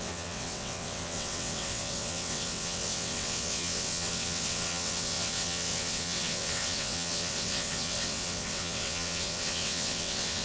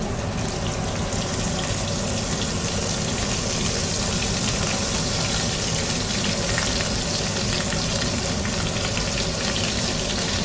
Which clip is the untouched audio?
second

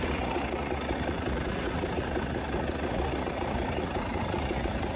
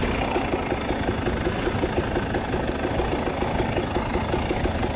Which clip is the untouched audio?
second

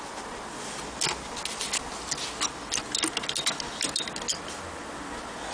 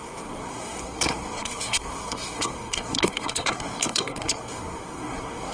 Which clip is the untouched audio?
first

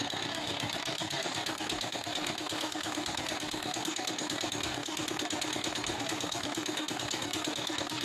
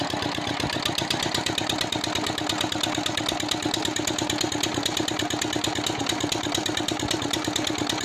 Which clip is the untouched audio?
second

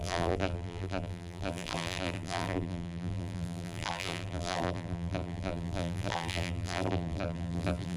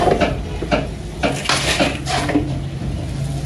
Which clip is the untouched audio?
second